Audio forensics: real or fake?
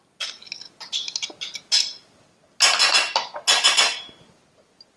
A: real